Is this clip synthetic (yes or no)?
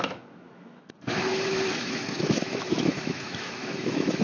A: yes